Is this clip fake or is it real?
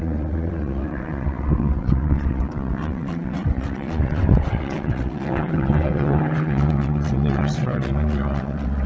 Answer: fake